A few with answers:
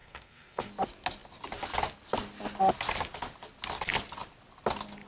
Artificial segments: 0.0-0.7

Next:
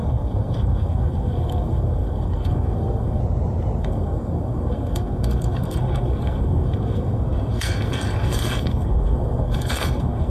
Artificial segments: 0.0-3.2; 3.8-10.3

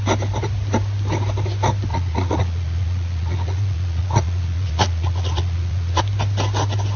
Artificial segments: 1.9-6.0

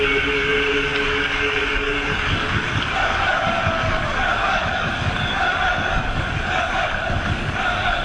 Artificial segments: 0.0-8.0

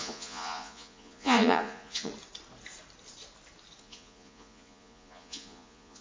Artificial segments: 0.0-2.1; 3.8-6.0

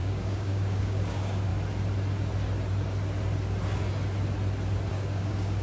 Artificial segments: 0.0-1.5; 4.9-5.6

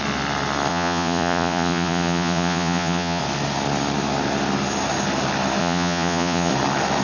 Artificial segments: 0.7-3.2; 5.6-6.5